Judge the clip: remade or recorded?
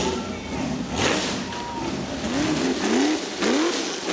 recorded